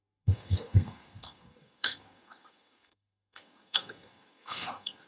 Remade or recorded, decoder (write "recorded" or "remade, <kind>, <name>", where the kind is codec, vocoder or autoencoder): remade, codec, SNAC